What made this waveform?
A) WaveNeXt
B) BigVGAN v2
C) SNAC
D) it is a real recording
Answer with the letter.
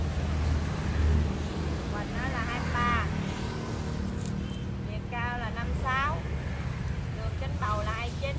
D